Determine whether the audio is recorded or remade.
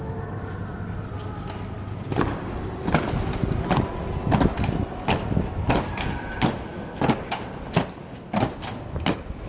recorded